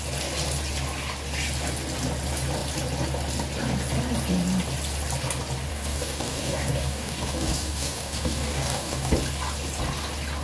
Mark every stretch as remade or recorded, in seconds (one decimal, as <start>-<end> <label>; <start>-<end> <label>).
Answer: 0.0-5.7 recorded; 5.7-9.1 remade; 9.1-10.4 recorded